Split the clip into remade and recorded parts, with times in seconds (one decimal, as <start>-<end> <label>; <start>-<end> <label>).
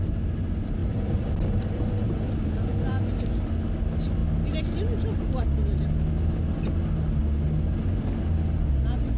0.0-0.8 recorded; 0.8-2.3 remade; 2.3-9.2 recorded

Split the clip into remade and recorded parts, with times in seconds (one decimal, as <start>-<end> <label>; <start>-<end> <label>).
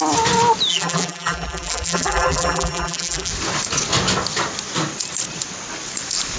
0.0-0.7 recorded; 0.7-3.3 remade; 3.3-6.4 recorded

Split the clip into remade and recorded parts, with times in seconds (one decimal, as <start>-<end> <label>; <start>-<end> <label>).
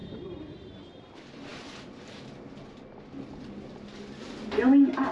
0.0-1.1 remade; 1.1-1.5 recorded; 1.5-3.9 remade; 3.9-5.1 recorded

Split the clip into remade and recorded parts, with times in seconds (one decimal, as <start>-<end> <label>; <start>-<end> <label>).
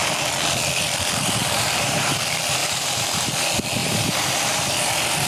0.0-1.4 recorded; 1.4-2.2 remade; 2.2-2.6 recorded; 2.6-3.3 remade; 3.3-3.8 recorded; 3.8-4.7 remade; 4.7-5.3 recorded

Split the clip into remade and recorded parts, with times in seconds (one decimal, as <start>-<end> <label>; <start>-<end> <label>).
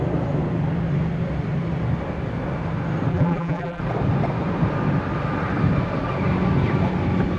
0.0-3.1 recorded; 3.1-3.8 remade; 3.8-7.4 recorded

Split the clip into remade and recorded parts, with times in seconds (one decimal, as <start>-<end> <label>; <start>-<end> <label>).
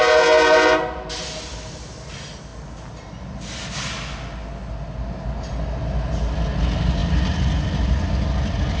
0.0-7.0 recorded; 7.0-8.1 remade; 8.1-8.8 recorded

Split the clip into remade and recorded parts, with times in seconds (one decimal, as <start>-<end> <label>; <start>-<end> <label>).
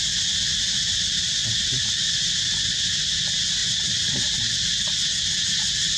0.0-6.0 recorded